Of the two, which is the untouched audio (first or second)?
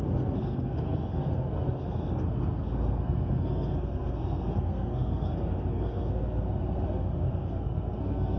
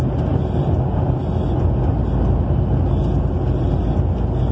second